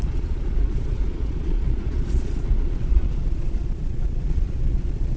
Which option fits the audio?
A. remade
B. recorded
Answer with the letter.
A